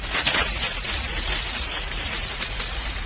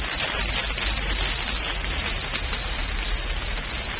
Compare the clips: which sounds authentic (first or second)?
second